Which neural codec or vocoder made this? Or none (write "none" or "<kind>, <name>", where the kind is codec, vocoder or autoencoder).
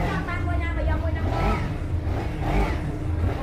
none